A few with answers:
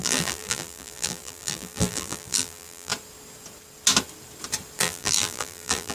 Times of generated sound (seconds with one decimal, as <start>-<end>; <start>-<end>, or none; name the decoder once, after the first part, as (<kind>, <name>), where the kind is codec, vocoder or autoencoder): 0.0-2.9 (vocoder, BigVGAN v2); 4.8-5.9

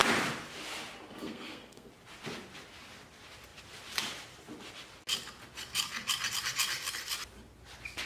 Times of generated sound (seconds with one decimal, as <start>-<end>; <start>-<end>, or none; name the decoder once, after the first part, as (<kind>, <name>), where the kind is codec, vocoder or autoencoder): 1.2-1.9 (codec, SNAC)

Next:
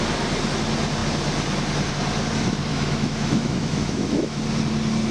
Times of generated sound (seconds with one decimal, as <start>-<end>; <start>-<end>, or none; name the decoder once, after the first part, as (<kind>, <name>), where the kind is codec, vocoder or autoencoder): 2.7-4.4 (autoencoder, DAC-VAE)

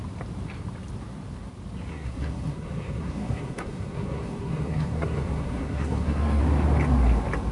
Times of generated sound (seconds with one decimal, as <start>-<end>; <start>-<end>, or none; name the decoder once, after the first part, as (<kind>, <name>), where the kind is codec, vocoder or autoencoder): 1.9-6.4 (codec, SNAC)

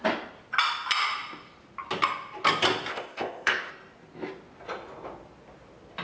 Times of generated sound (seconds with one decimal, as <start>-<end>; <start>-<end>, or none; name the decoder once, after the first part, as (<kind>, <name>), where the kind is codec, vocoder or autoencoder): 2.9-3.7 (codec, ZipCodec)